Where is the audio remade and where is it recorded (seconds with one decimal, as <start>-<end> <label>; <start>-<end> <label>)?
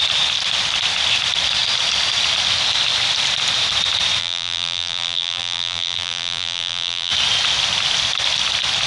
0.0-4.2 recorded; 4.2-7.1 remade; 7.1-8.9 recorded